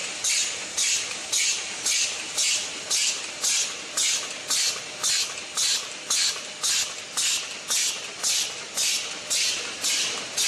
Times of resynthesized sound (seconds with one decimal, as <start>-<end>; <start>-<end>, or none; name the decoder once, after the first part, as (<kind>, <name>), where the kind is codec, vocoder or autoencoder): none